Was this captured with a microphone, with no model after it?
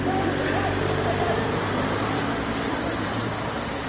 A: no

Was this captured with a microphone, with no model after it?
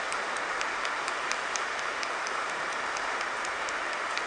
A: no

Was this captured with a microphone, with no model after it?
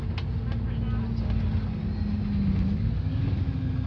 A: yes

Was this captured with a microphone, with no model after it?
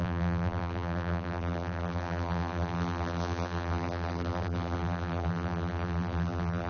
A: no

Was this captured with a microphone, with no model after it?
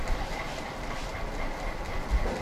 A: yes